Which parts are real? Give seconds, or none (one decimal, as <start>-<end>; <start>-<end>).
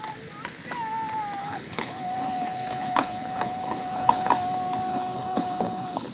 0.0-1.4; 4.3-4.9